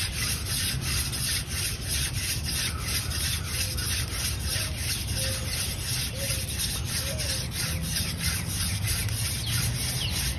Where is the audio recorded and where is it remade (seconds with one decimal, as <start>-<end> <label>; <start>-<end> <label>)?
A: 0.0-10.4 recorded